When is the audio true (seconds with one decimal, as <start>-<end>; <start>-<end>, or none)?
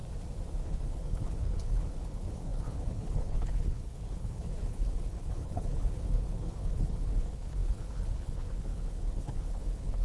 0.0-0.6